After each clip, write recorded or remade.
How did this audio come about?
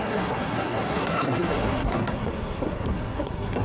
remade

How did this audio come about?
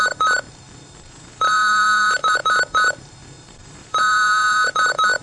remade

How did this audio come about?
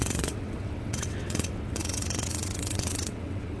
remade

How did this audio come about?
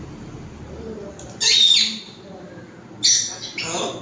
recorded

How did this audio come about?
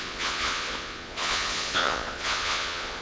remade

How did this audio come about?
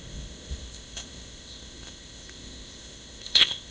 remade